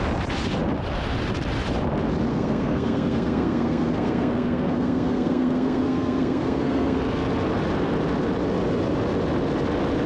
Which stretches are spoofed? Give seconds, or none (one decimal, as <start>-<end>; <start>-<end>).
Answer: 2.3-7.0